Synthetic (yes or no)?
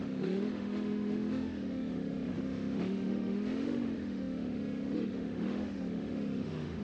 yes